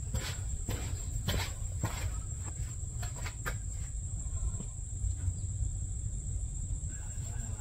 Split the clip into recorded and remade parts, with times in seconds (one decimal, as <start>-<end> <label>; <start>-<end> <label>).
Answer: 0.0-7.6 remade